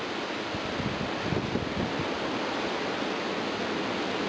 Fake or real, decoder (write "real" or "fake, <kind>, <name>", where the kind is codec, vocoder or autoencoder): real